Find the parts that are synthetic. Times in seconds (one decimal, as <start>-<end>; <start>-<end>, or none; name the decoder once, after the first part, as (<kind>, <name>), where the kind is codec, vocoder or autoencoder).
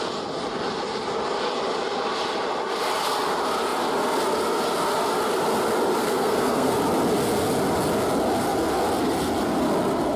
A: 6.0-6.7 (codec, SNAC)